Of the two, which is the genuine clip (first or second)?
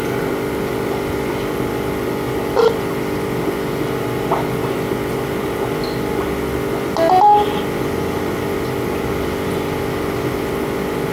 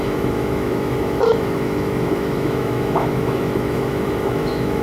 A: first